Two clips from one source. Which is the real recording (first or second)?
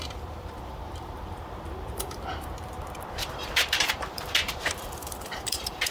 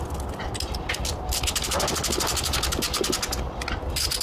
second